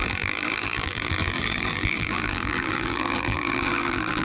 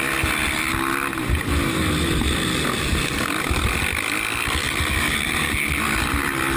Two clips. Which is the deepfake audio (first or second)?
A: first